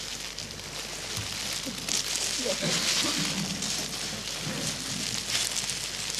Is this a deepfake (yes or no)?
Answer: no